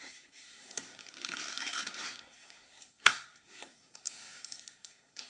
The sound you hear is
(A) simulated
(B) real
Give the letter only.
A